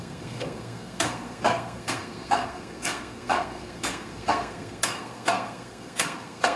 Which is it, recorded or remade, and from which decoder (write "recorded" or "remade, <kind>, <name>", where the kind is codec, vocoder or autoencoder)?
remade, codec, SNAC